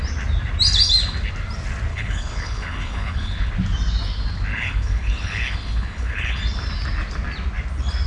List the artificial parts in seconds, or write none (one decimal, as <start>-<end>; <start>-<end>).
1.9-3.5; 4.5-6.4